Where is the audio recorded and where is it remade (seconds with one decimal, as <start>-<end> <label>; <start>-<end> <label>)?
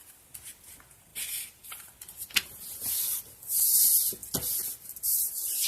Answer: 0.0-1.1 recorded; 1.1-1.9 remade; 1.9-5.7 recorded